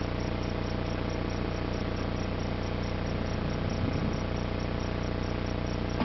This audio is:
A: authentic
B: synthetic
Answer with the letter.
A